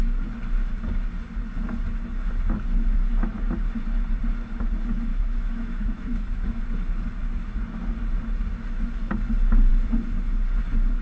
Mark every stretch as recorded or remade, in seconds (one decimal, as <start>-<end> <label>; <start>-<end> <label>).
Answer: 0.0-5.1 recorded; 5.1-6.6 remade; 6.6-11.0 recorded